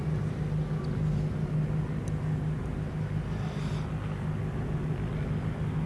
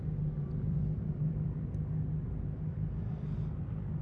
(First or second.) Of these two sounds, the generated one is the second